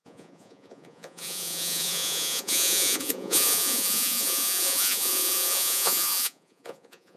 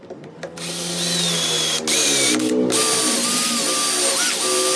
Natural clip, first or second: second